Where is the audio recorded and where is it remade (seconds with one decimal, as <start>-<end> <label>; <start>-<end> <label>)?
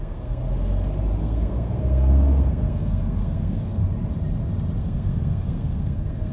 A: 0.0-0.4 remade; 0.4-1.2 recorded; 1.2-3.8 remade; 3.8-4.8 recorded; 4.8-6.3 remade